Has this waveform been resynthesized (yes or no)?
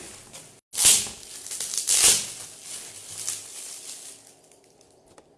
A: no